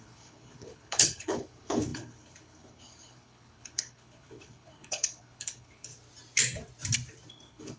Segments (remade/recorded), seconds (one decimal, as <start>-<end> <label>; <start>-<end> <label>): 0.0-5.9 remade; 5.9-7.3 recorded; 7.3-7.8 remade